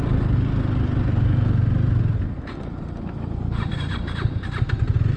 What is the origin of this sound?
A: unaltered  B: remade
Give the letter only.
A